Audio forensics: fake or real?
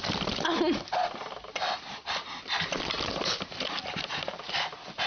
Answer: real